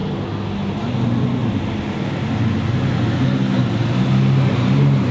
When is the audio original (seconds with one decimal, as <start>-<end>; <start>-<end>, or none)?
0.0-5.1